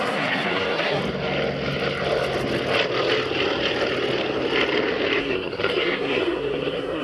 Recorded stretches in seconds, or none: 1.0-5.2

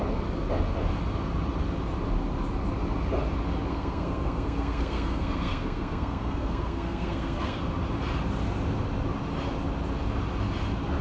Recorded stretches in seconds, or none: 0.0-3.7; 7.6-11.0

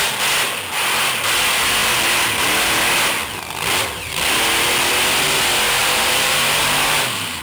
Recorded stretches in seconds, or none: 0.0-5.8

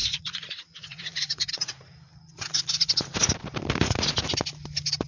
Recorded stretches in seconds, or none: 1.5-5.1

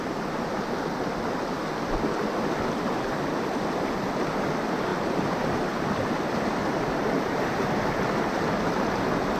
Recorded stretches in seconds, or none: 0.0-4.9; 7.6-9.4